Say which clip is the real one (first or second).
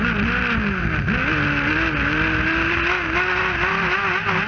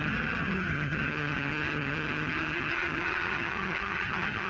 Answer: first